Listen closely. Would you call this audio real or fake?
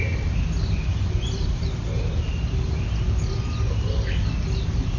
real